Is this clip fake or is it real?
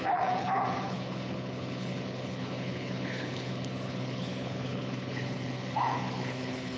fake